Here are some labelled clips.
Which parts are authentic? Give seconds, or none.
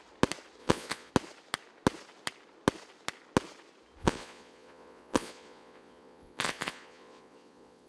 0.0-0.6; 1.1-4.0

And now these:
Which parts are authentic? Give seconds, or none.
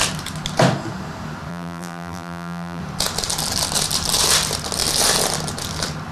0.0-1.5; 2.8-6.1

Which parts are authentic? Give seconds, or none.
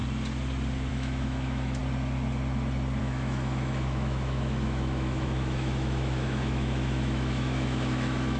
0.0-0.9; 1.8-3.0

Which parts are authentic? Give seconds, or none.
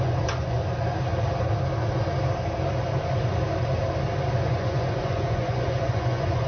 0.6-4.5